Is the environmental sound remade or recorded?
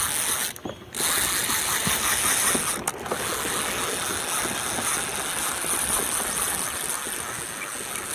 recorded